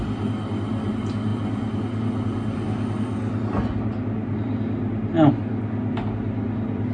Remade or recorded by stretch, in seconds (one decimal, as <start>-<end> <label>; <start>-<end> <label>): 0.0-6.9 recorded